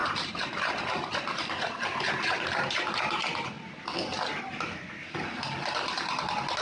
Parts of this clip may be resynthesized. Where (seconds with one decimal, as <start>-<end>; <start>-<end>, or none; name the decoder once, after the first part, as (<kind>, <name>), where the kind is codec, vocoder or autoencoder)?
0.0-1.7 (vocoder, BigVGAN v2); 4.1-5.4